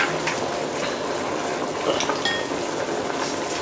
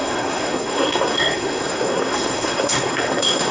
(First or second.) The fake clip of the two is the second